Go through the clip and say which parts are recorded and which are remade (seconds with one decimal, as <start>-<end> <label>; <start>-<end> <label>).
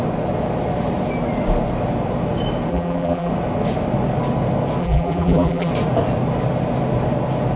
0.0-2.7 recorded; 2.7-3.3 remade; 3.3-4.8 recorded; 4.8-5.7 remade; 5.7-7.6 recorded